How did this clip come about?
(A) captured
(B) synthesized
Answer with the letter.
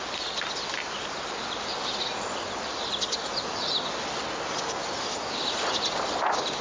A